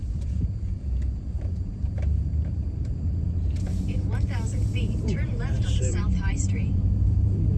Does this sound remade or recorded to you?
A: remade